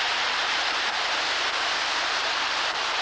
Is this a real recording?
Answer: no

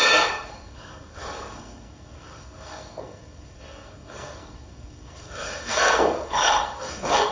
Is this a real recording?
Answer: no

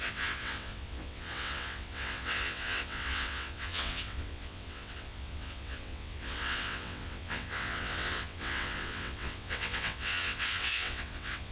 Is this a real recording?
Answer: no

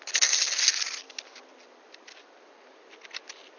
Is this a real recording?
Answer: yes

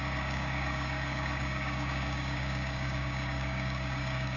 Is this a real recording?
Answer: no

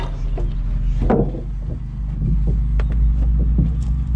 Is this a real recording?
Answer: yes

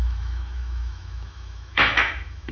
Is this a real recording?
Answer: no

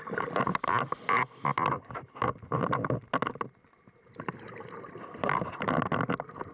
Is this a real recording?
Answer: yes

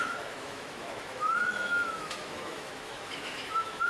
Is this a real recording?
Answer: no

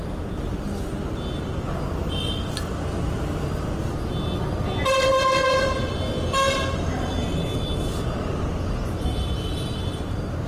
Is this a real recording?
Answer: yes